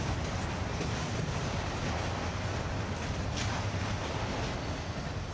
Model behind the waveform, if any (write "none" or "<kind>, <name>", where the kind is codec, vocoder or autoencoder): none